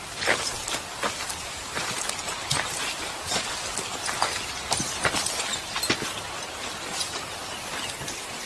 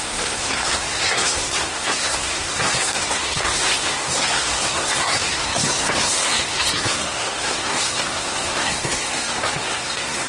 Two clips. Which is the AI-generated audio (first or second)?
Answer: second